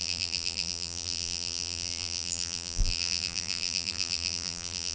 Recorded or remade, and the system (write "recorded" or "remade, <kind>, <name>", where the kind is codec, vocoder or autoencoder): remade, vocoder, BigVGAN v2